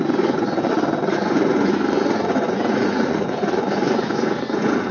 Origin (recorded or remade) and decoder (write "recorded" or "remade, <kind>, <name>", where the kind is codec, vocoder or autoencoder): remade, vocoder, Vocos